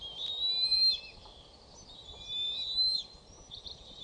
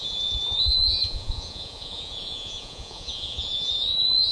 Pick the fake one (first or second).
second